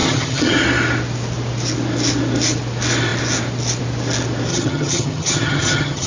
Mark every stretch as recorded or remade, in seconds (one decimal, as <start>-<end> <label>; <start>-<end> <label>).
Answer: 0.0-0.6 remade; 0.6-4.5 recorded; 4.5-6.1 remade